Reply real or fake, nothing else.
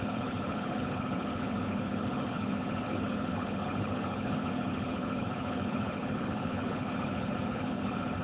fake